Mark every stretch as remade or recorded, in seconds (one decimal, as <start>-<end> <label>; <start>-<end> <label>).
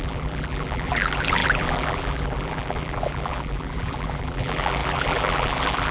0.0-5.9 remade